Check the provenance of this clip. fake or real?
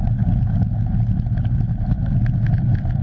real